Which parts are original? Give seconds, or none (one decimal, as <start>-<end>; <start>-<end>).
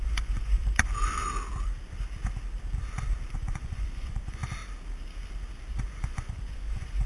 0.9-3.3; 4.4-5.7